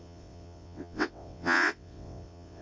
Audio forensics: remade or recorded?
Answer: remade